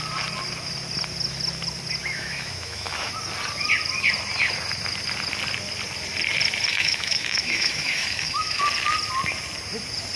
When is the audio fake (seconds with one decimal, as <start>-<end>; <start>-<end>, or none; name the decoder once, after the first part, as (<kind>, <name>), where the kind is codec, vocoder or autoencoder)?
2.0-3.1 (autoencoder, DAC-VAE); 6.7-8.6